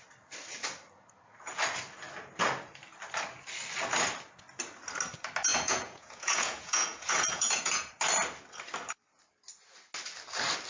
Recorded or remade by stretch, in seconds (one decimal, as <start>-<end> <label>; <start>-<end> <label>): 0.0-5.5 recorded; 5.5-7.9 remade; 7.9-10.7 recorded